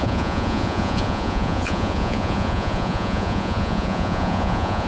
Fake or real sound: fake